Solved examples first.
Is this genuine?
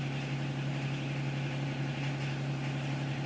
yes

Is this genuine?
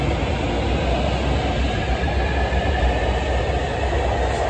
yes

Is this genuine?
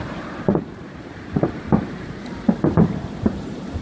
no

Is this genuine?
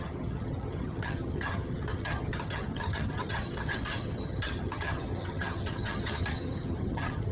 no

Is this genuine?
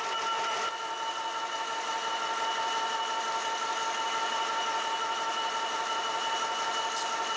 yes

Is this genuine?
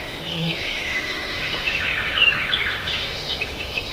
no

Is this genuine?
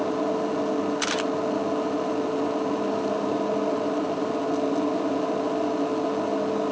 yes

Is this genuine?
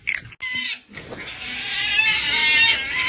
yes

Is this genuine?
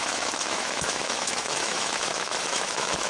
no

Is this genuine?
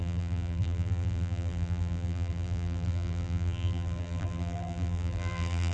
no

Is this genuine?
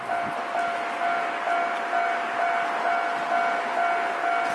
yes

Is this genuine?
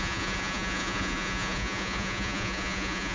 no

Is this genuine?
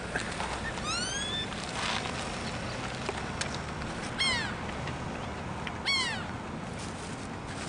yes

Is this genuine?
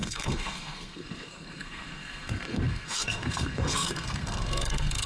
no